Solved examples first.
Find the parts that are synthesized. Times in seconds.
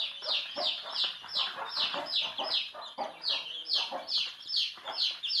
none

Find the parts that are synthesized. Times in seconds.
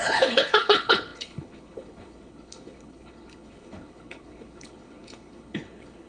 0.0-6.1 (codec, HILCodec)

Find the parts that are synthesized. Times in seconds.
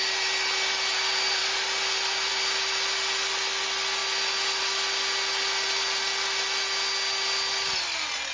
none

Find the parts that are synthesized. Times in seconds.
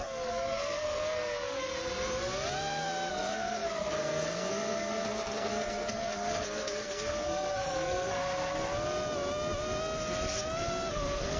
0.0-1.7 (codec, SNAC); 3.1-8.2; 10.9-11.4